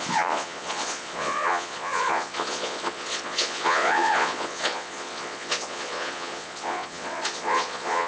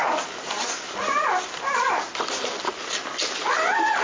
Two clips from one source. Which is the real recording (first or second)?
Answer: second